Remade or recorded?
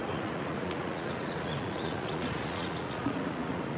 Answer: remade